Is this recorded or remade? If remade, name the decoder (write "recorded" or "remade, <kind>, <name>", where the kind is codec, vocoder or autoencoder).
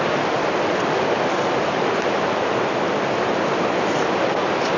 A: recorded